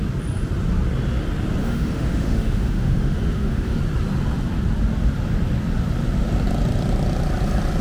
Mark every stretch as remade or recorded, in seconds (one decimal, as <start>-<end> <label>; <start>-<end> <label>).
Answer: 0.0-1.6 recorded; 1.6-3.8 remade; 3.8-7.8 recorded